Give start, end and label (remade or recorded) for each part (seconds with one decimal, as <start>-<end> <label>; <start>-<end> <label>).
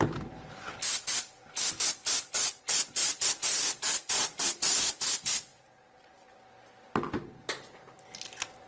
0.0-2.0 recorded; 2.0-2.6 remade; 2.6-3.0 recorded; 3.0-4.8 remade; 4.8-8.7 recorded